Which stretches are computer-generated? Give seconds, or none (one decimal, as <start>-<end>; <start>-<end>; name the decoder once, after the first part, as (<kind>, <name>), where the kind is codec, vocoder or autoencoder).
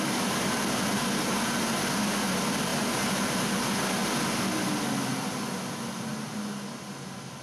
none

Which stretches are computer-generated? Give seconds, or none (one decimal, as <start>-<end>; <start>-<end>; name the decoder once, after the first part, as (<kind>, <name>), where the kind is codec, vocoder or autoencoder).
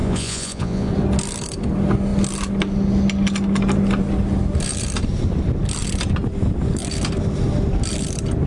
0.0-0.9 (vocoder, Vocos)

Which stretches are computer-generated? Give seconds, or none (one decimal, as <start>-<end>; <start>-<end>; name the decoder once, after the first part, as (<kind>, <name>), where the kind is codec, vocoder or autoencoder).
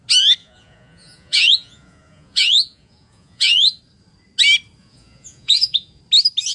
0.4-3.8 (vocoder, Vocos); 4.8-6.0